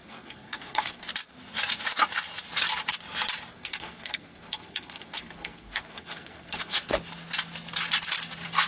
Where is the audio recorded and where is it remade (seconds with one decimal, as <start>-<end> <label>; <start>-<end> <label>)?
0.0-1.1 remade; 1.1-3.5 recorded; 3.5-6.9 remade; 6.9-8.7 recorded